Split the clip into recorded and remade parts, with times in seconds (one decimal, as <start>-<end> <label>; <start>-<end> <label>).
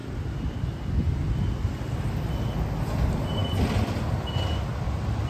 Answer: 0.0-5.3 recorded